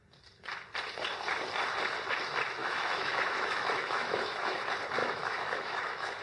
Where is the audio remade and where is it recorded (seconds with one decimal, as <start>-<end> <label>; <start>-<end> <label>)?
0.0-2.6 recorded; 2.6-4.6 remade; 4.6-5.0 recorded; 5.0-6.2 remade